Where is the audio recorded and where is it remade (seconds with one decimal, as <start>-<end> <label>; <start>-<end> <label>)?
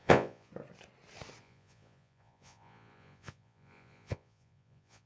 0.0-0.5 remade; 0.5-1.4 recorded; 1.4-5.1 remade